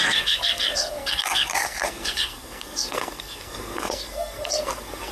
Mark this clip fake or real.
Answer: fake